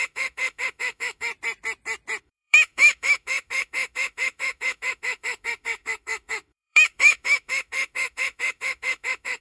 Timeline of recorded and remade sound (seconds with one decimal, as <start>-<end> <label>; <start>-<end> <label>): 0.0-1.3 remade; 1.3-2.2 recorded; 2.2-9.4 remade

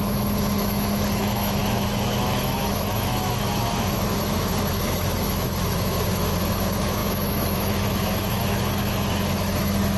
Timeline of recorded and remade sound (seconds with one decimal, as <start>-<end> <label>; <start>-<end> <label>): 0.0-10.0 remade

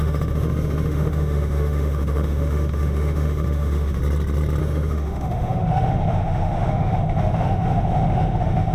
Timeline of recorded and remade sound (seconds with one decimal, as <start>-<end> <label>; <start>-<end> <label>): 0.0-4.0 remade; 4.0-4.6 recorded; 4.6-8.7 remade

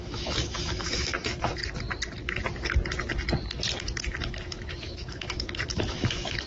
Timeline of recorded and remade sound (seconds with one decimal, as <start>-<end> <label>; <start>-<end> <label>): 0.0-1.6 remade; 1.6-4.0 recorded; 4.0-6.5 remade